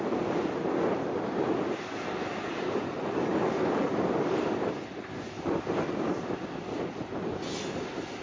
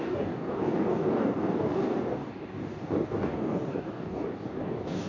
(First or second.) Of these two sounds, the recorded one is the first